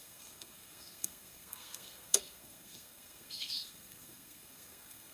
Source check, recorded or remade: remade